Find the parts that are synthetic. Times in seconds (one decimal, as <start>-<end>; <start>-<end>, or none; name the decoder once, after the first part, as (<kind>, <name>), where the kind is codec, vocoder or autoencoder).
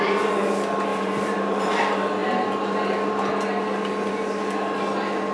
0.9-1.8 (vocoder, BigVGAN v2)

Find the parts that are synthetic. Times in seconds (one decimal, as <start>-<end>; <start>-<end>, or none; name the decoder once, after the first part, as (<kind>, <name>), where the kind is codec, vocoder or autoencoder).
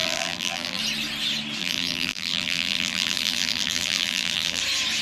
0.0-0.8 (vocoder, BigVGAN v2); 1.6-4.6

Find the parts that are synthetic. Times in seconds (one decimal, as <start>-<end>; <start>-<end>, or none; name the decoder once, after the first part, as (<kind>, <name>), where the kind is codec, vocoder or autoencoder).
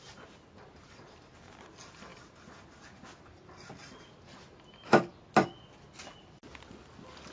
none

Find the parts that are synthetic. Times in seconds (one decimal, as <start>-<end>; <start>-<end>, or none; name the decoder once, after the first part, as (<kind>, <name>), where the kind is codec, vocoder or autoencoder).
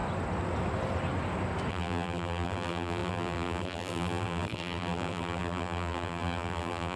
1.7-7.0 (vocoder, BigVGAN v2)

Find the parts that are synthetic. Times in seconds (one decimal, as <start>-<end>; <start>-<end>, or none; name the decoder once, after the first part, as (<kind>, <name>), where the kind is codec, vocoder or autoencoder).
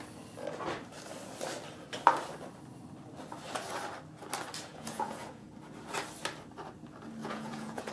4.7-5.5 (vocoder, Vocos); 7.2-7.9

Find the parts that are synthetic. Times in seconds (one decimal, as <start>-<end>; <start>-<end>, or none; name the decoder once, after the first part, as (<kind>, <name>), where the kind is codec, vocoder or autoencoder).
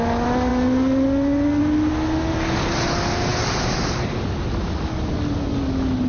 none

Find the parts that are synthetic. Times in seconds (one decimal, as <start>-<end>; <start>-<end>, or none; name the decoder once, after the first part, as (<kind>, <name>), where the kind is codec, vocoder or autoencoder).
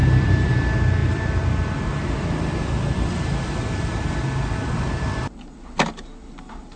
0.0-0.5 (vocoder, BigVGAN v2); 1.0-5.1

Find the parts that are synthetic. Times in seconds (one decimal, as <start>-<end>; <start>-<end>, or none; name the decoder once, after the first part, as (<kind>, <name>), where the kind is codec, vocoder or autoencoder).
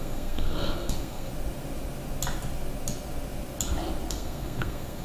0.0-1.3 (codec, SNAC); 4.1-5.0